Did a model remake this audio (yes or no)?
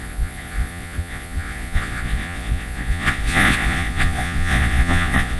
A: yes